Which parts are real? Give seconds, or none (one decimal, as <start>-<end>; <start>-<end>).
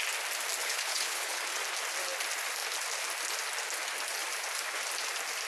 0.0-0.6; 1.4-5.5